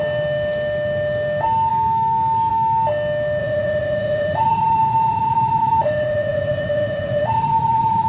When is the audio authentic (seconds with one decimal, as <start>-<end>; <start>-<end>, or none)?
0.0-3.4